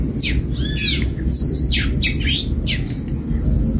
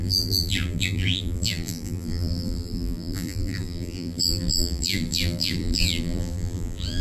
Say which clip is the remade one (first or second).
second